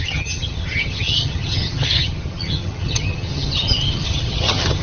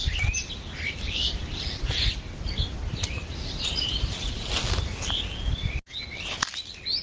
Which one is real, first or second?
second